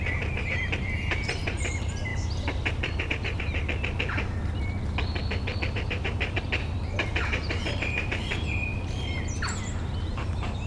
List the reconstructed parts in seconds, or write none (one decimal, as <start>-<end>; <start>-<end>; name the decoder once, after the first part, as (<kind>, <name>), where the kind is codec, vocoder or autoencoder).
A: 0.0-3.5 (vocoder, BigVGAN v2); 5.7-8.7; 9.6-10.7